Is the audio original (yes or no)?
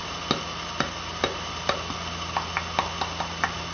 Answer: yes